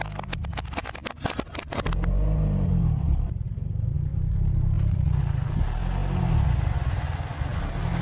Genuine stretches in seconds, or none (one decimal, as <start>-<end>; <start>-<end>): 0.0-4.1; 5.2-8.0